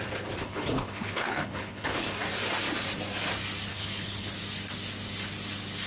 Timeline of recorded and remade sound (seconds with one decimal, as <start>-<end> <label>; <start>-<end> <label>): 0.0-0.4 recorded; 0.4-2.2 remade; 2.2-3.7 recorded; 3.7-4.3 remade; 4.3-5.9 recorded